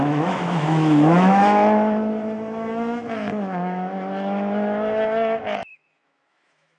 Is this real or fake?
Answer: fake